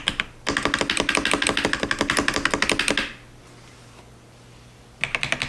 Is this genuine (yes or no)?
yes